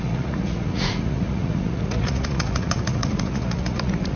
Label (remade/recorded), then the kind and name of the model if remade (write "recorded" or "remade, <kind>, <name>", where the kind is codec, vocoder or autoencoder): remade, vocoder, Vocos